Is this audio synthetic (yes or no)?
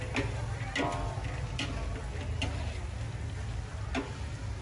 no